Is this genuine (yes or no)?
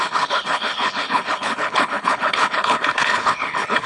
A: no